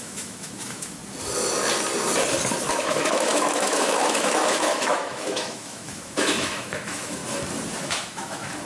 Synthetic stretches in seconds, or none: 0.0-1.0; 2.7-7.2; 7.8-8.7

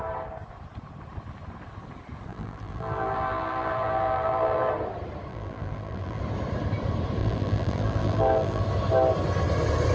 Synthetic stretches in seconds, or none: 2.3-4.7; 5.3-6.2; 7.2-8.6

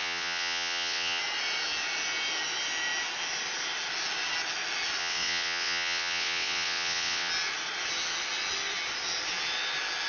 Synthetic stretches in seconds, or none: 0.0-1.2; 5.0-7.3

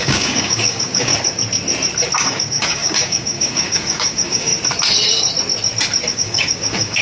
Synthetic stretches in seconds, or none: 0.0-1.1; 2.2-4.5; 6.1-7.0